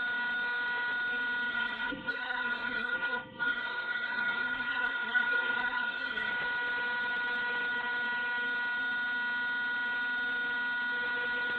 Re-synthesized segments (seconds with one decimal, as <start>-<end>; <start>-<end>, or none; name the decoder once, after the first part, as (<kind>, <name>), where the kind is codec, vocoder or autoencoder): 1.5-6.3 (codec, SNAC)